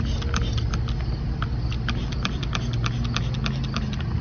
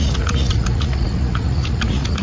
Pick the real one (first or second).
first